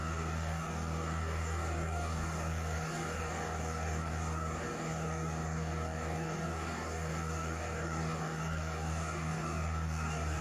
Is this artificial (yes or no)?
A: yes